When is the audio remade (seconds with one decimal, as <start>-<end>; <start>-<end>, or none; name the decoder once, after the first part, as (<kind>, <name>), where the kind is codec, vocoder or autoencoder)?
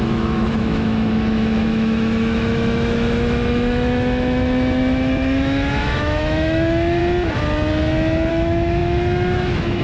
0.0-7.0 (autoencoder, DAC-VAE); 8.3-9.8